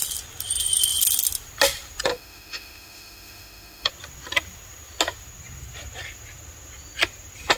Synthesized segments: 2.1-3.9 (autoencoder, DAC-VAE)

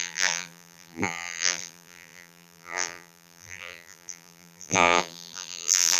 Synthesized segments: 0.0-6.0 (vocoder, BigVGAN v2)

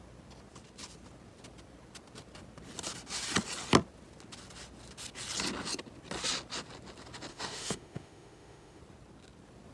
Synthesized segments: 7.3-8.8 (autoencoder, DAC-VAE)

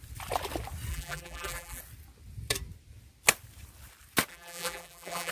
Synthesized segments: 0.9-1.8 (vocoder, BigVGAN v2); 4.3-5.3